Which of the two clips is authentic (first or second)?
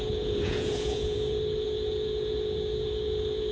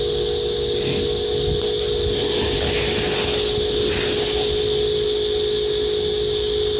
second